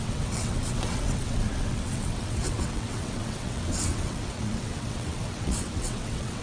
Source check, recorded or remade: remade